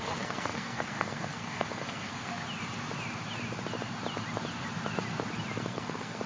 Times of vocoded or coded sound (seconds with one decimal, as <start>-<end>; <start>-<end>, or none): 0.0-2.3; 5.6-6.3

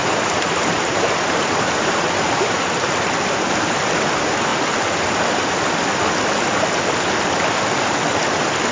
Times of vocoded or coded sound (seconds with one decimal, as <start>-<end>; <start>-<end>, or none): 0.0-2.7